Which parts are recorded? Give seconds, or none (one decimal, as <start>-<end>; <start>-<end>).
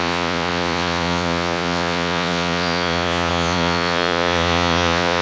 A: none